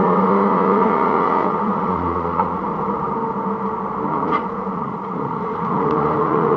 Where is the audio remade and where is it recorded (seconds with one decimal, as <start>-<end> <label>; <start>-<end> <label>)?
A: 0.0-2.7 remade; 2.7-4.1 recorded; 4.1-6.6 remade